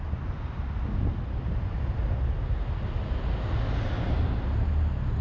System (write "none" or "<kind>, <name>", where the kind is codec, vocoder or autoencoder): none